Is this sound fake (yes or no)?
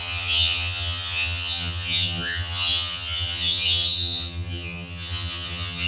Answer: yes